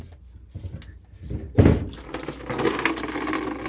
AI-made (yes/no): no